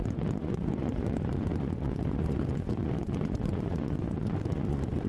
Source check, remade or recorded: remade